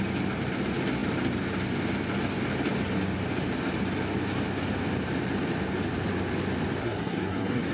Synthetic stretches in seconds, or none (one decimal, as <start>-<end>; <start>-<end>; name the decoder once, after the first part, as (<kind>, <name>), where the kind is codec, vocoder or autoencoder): 6.8-7.7 (codec, SNAC)